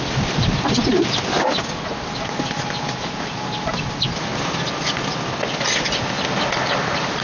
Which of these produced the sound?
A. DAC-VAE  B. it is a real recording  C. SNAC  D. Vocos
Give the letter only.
B